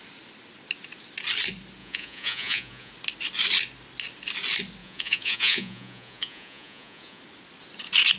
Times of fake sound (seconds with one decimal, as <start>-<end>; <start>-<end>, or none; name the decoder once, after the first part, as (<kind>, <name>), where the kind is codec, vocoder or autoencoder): 1.8-2.9 (vocoder, Vocos); 4.8-7.2